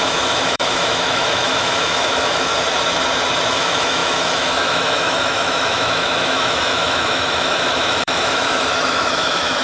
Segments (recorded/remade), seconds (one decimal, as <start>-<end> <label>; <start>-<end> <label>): 0.0-2.5 remade; 2.5-3.5 recorded; 3.5-9.6 remade